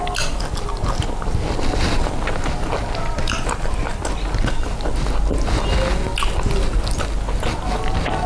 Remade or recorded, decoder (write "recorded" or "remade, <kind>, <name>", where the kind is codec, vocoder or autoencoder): recorded